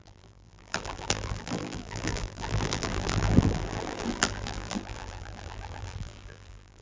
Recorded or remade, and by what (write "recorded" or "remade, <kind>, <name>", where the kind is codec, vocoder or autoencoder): remade, vocoder, BigVGAN v2